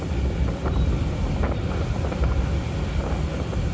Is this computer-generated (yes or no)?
no